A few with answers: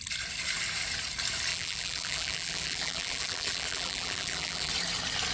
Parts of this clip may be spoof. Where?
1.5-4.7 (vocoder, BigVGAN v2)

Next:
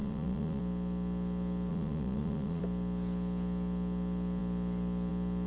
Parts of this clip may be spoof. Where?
0.0-0.6 (vocoder, Vocos); 1.7-2.6

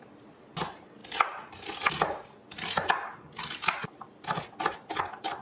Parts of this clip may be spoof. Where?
none

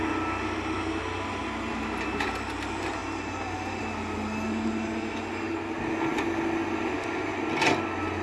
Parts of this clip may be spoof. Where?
none

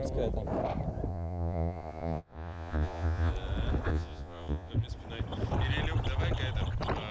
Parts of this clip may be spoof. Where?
1.1-3.3 (vocoder, Vocos); 3.9-4.7

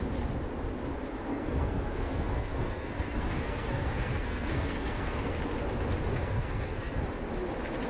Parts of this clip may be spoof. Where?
1.3-5.4 (codec, SNAC); 6.1-7.0

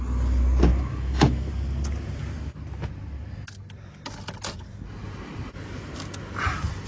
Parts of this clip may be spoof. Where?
0.7-1.5 (autoencoder, DAC-VAE)